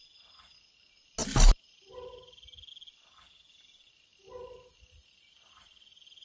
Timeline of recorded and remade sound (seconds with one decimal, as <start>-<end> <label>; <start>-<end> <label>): 0.0-6.2 recorded